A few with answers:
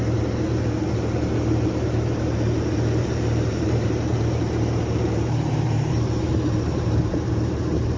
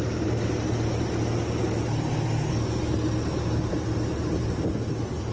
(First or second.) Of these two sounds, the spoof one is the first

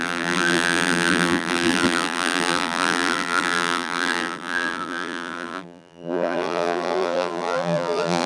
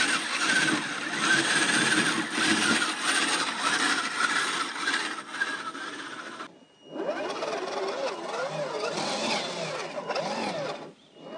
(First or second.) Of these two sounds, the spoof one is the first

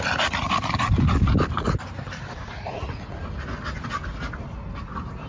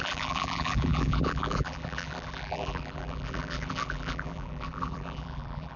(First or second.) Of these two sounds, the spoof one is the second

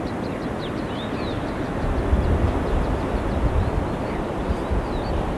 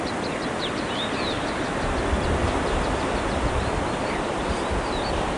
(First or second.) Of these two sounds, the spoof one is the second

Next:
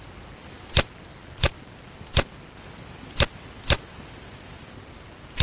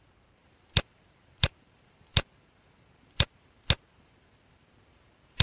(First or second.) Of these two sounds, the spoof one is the second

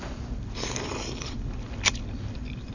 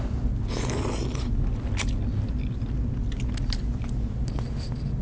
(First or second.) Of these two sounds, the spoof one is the first